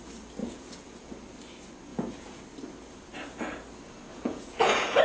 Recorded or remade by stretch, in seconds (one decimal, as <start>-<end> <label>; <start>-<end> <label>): 0.0-0.4 recorded; 0.4-1.1 remade; 1.1-1.9 recorded; 1.9-2.4 remade; 2.4-4.1 recorded; 4.1-5.0 remade